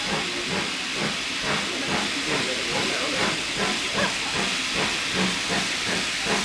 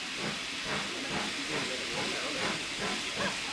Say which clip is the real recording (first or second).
second